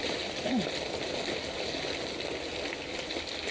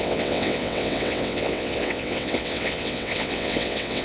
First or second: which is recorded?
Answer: first